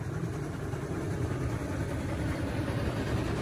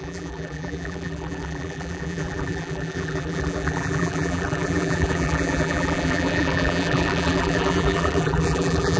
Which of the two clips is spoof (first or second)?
second